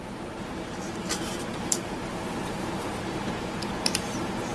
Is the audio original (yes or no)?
no